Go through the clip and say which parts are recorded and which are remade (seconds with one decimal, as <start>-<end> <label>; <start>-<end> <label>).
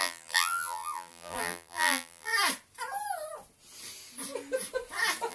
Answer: 0.0-2.3 remade; 2.3-5.3 recorded